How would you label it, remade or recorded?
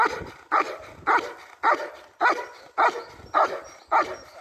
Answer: recorded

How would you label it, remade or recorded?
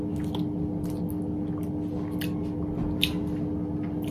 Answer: recorded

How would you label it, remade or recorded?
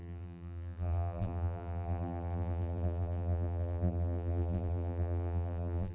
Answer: remade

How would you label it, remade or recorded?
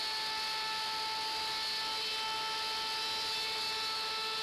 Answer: recorded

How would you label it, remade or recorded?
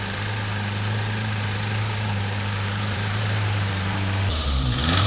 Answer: remade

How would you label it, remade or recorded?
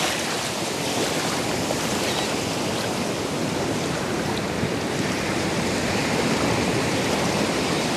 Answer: remade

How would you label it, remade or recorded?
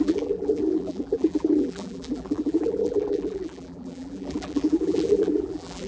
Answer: remade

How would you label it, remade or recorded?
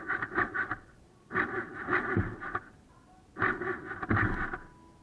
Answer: remade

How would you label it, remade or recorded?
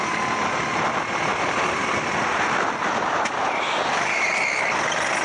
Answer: recorded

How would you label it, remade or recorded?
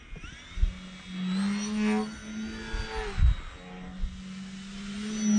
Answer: recorded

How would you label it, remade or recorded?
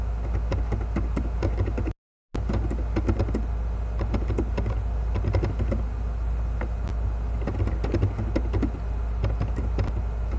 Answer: recorded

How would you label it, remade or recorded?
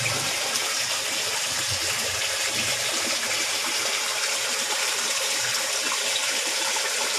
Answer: remade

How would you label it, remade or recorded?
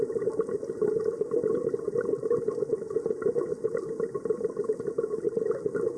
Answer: recorded